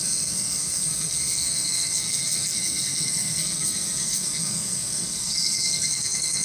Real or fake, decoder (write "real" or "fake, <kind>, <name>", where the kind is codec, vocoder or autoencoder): fake, codec, SNAC